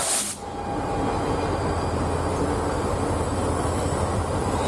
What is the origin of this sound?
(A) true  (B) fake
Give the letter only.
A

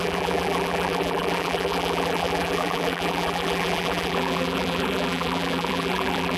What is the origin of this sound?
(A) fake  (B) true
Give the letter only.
A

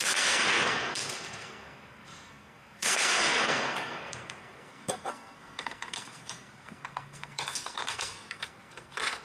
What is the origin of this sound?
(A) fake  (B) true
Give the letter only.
A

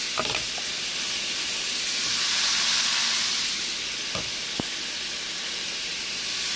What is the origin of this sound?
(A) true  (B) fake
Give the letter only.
A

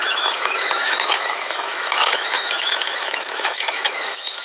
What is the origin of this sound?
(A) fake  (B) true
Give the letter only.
A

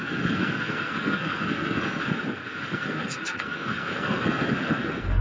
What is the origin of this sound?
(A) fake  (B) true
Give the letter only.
A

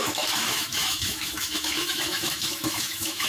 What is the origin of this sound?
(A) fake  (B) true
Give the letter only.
A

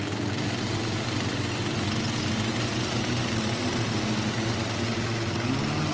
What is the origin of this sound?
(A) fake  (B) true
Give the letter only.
B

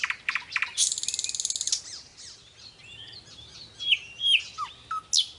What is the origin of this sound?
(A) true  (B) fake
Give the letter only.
A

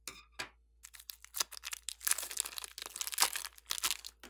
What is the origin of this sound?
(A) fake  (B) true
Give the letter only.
B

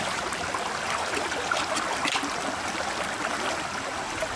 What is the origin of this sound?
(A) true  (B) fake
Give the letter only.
A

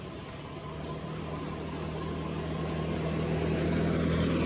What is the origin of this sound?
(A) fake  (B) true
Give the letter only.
B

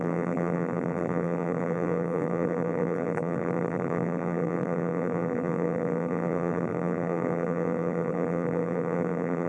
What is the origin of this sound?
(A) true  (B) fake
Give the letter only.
B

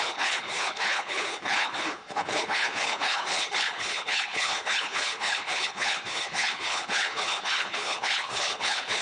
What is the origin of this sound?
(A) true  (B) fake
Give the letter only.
B